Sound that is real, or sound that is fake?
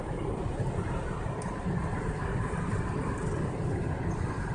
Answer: real